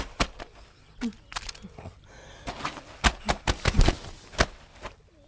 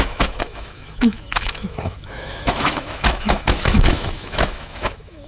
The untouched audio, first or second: first